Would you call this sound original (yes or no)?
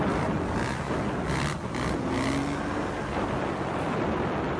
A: yes